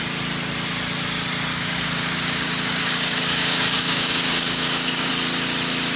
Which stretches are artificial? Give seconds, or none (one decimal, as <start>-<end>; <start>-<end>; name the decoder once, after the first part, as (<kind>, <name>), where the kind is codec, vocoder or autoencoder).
1.5-5.1 (codec, DAC)